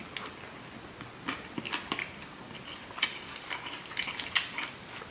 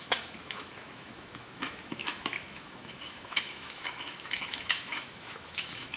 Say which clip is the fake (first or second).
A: second